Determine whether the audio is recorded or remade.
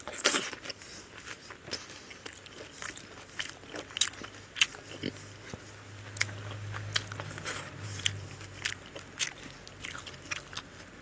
recorded